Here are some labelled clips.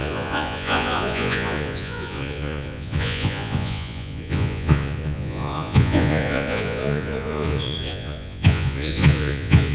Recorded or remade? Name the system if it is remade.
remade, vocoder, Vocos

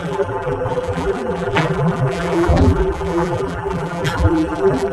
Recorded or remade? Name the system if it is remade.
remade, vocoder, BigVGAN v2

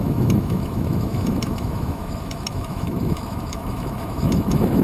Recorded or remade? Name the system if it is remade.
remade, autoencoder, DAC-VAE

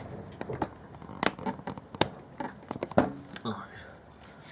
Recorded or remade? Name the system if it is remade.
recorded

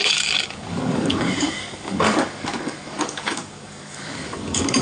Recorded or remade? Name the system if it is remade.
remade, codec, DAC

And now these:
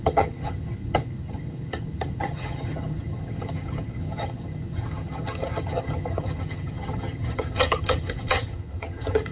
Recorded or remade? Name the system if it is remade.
remade, vocoder, HiFi-GAN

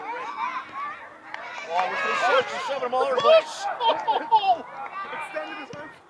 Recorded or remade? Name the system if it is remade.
recorded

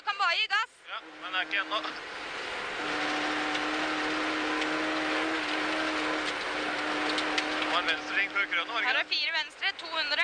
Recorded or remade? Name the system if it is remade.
recorded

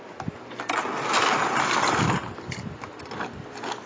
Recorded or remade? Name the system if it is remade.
recorded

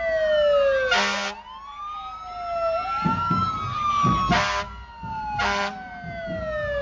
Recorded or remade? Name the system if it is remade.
recorded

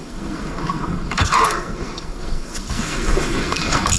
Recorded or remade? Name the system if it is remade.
remade, codec, SNAC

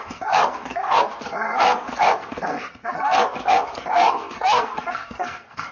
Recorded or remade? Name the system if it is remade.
remade, codec, SNAC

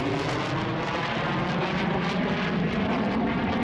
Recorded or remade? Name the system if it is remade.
recorded